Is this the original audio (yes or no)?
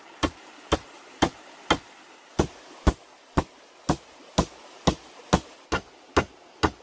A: yes